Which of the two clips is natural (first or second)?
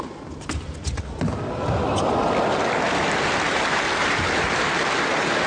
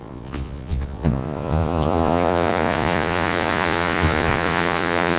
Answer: first